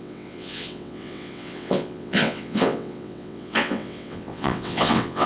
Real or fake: fake